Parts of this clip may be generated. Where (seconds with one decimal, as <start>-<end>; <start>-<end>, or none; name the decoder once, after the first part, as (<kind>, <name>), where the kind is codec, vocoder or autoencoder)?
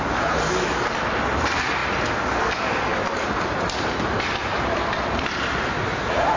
none